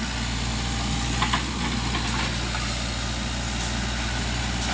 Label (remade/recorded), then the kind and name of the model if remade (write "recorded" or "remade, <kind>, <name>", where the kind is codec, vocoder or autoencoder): recorded